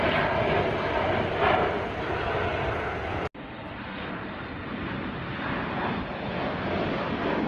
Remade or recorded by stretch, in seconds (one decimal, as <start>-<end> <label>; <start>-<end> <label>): 0.0-7.5 recorded